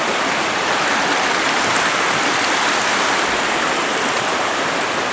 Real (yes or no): no